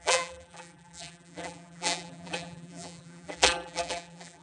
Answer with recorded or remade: remade